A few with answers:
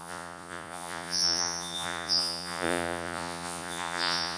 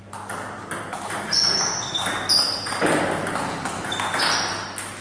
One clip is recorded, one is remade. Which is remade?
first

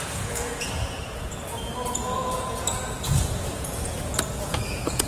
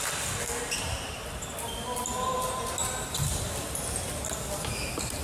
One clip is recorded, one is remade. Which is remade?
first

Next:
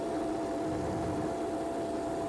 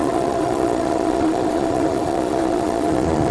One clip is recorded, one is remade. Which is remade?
second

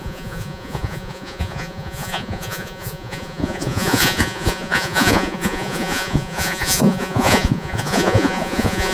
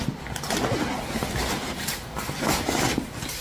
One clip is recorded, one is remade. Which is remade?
first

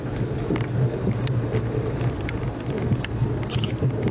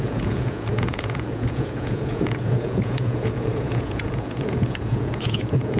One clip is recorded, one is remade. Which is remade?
second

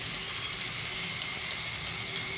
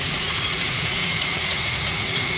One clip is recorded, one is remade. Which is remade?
second